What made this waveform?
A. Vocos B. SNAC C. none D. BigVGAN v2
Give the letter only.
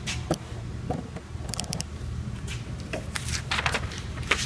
D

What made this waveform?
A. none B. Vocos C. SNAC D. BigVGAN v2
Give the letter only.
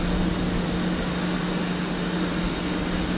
A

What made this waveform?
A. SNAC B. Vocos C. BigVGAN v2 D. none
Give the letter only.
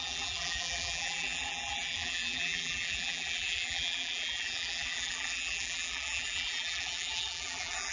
C